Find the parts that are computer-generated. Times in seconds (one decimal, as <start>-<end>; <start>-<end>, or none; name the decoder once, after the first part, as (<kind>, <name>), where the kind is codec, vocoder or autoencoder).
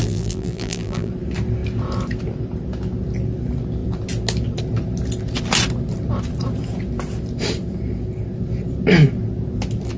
0.0-1.1 (vocoder, BigVGAN v2)